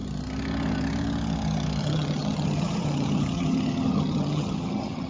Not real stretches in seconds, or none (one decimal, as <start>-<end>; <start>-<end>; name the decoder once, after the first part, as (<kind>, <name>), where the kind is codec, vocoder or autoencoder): 1.8-5.1 (vocoder, HiFi-GAN)